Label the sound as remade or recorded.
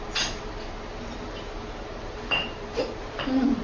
remade